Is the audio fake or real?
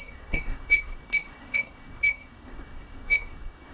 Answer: fake